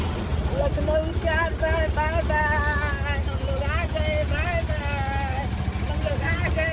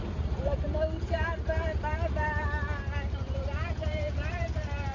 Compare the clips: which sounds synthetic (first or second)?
second